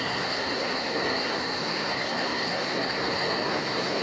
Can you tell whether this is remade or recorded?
remade